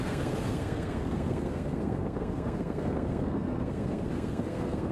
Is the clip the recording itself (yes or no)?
no